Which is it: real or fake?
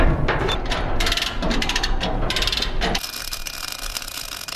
real